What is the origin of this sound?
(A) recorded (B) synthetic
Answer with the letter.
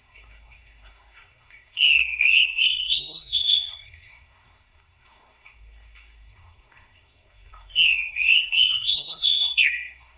B